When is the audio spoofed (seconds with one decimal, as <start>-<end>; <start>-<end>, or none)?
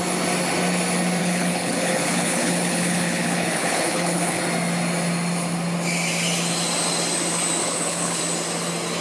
1.2-4.4; 7.6-8.2